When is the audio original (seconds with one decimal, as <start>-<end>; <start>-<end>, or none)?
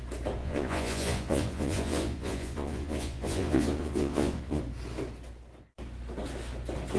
0.0-0.4; 4.6-7.0